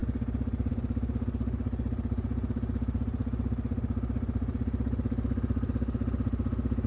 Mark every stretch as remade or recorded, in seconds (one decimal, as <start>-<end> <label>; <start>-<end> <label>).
0.0-6.9 recorded